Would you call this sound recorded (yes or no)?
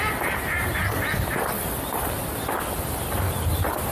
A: yes